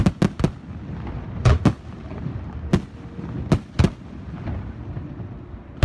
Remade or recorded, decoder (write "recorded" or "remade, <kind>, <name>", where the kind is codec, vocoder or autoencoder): recorded